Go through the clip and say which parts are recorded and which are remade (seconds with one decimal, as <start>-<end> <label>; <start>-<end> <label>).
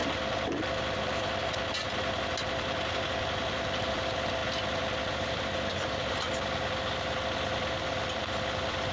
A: 0.0-8.9 recorded